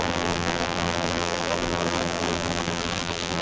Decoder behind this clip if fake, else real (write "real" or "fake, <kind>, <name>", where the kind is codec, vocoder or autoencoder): fake, vocoder, BigVGAN v2